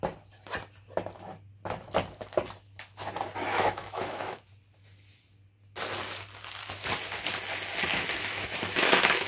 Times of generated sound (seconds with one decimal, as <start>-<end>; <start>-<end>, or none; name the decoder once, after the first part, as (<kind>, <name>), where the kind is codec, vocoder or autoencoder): 3.5-4.5 (autoencoder, DAC-VAE); 7.9-9.3